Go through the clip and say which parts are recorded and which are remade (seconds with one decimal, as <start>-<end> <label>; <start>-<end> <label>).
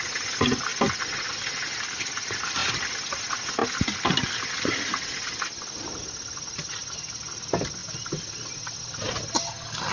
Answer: 0.0-9.9 recorded